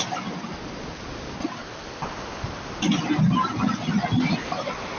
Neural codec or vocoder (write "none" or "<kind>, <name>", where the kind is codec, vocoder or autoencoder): none